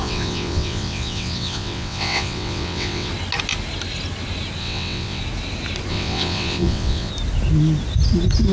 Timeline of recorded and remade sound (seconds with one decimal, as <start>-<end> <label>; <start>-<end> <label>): 0.0-3.1 remade; 3.1-4.6 recorded; 4.6-5.2 remade; 5.2-5.9 recorded; 5.9-7.1 remade; 7.1-8.5 recorded